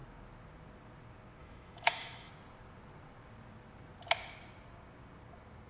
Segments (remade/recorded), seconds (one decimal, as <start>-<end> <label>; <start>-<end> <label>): 0.0-1.4 recorded; 1.4-2.3 remade; 2.3-5.7 recorded